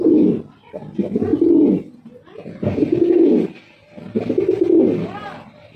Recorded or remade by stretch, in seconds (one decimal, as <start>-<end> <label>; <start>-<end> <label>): 0.0-5.8 recorded